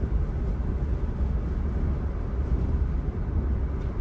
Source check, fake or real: real